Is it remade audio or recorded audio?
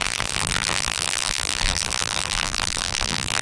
remade